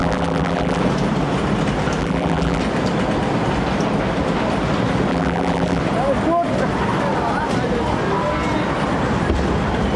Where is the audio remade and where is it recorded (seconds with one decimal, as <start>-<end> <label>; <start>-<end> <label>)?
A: 0.0-0.8 remade; 0.8-2.0 recorded; 2.0-2.6 remade; 2.6-5.1 recorded; 5.1-5.8 remade; 5.8-10.0 recorded

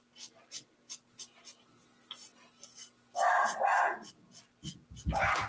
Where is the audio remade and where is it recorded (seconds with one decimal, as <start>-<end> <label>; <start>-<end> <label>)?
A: 0.0-5.5 recorded

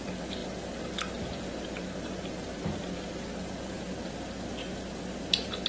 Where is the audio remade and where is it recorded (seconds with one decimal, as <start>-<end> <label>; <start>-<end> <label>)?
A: 0.0-5.7 recorded

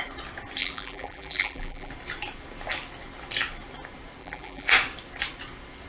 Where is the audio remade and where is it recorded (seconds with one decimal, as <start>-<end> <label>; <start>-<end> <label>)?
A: 0.0-0.6 recorded; 0.6-1.9 remade; 1.9-4.2 recorded; 4.2-4.7 remade; 4.7-5.9 recorded

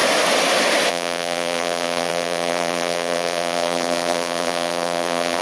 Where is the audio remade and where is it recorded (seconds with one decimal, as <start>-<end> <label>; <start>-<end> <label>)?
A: 0.0-0.9 recorded; 0.9-5.4 remade